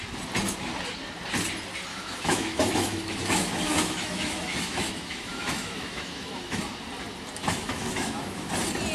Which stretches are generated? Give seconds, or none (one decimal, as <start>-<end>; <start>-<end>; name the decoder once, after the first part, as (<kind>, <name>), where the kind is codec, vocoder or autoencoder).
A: 1.9-6.6 (autoencoder, DAC-VAE); 7.4-8.5